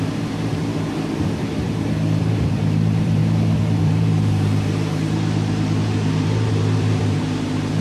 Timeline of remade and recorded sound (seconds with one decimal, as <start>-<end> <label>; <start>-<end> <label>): 0.0-0.7 remade; 0.7-2.2 recorded; 2.2-3.2 remade; 3.2-3.8 recorded; 3.8-7.8 remade